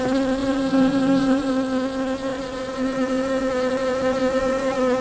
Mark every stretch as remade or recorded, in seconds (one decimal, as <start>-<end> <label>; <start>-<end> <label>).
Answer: 0.0-0.4 recorded; 0.4-1.5 remade; 1.5-2.3 recorded; 2.3-5.0 remade